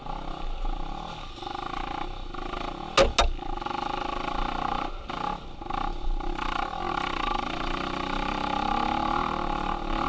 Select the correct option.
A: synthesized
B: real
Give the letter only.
B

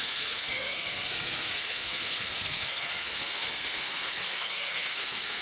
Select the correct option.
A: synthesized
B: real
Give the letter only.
A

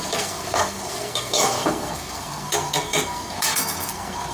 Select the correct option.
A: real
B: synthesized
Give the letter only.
B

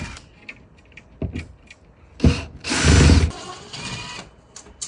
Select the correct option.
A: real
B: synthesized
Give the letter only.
A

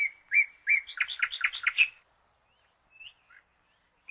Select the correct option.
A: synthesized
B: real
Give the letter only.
B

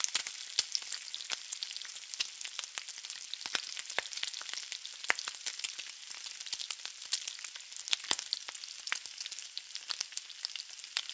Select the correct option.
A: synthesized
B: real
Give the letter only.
B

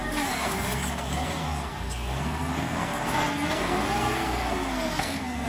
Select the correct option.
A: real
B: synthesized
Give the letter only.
B